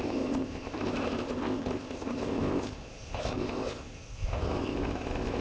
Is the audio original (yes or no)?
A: no